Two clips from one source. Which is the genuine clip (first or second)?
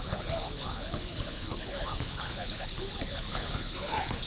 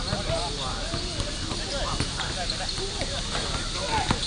second